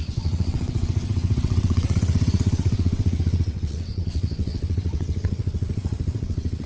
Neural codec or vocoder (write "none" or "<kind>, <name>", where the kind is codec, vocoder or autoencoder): vocoder, WaveNeXt